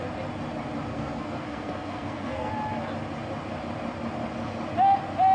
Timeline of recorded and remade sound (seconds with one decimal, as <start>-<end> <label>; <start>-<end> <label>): 0.0-0.9 recorded; 0.9-2.5 remade; 2.5-5.3 recorded